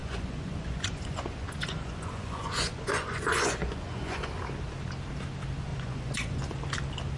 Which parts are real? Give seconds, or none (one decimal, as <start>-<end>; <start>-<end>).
4.3-5.7; 6.4-7.2